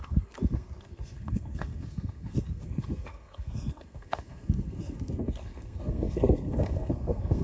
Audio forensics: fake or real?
fake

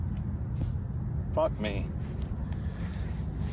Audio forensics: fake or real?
real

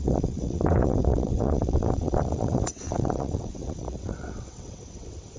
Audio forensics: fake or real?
fake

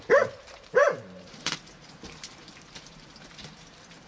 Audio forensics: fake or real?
fake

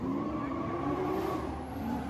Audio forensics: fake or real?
real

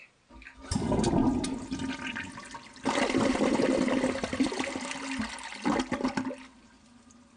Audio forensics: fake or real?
real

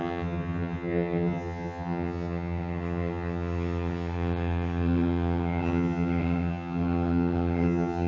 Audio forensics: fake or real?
fake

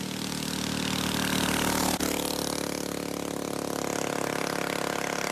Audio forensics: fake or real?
real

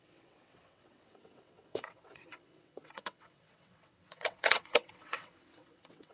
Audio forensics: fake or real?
fake